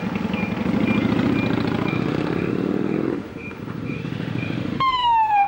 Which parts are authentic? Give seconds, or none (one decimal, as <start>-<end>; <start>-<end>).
0.0-1.9